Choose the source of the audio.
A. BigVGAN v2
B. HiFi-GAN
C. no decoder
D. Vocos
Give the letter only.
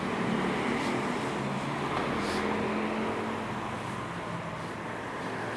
C